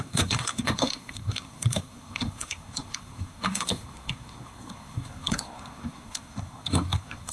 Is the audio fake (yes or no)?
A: yes